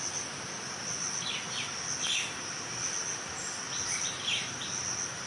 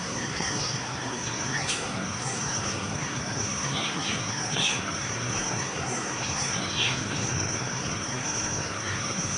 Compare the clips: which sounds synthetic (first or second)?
second